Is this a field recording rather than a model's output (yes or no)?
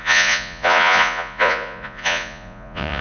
no